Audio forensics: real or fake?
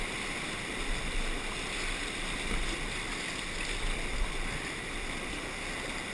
real